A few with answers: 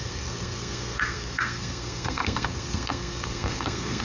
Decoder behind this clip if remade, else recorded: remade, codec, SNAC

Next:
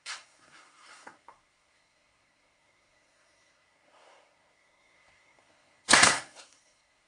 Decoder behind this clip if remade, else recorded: remade, codec, SNAC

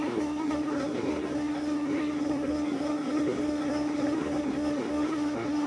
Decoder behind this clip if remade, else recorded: remade, codec, SNAC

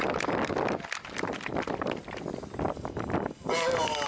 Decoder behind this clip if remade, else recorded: recorded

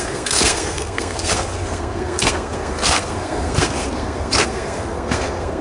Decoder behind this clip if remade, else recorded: remade, codec, SNAC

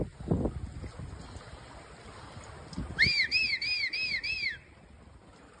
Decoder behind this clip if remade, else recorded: recorded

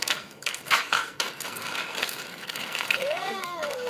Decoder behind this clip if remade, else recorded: remade, codec, SNAC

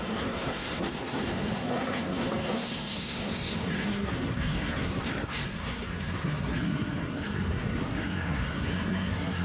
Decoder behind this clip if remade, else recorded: remade, codec, SNAC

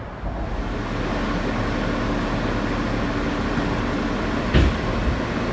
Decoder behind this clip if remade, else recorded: recorded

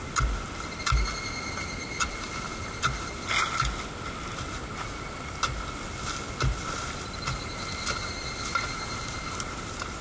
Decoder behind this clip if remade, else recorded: recorded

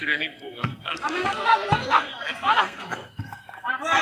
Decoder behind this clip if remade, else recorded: remade, codec, SNAC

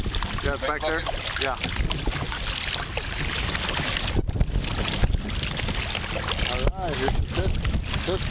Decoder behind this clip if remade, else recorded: recorded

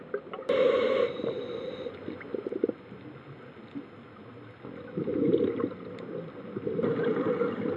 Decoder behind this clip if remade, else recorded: recorded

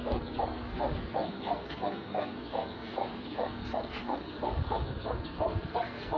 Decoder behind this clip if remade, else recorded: remade, codec, SNAC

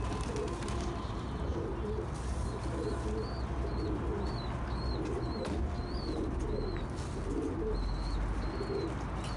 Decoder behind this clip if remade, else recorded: recorded